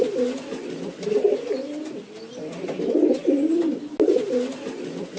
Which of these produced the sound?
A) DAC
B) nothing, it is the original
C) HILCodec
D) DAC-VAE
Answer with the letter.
B